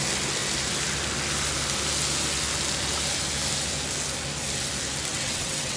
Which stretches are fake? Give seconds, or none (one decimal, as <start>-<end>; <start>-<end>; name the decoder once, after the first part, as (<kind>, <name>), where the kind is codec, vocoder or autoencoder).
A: 5.1-5.8 (vocoder, WaveNeXt)